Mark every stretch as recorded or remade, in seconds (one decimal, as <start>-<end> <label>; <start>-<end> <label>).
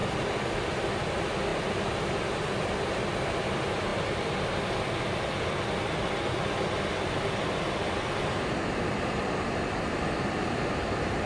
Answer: 0.0-11.3 recorded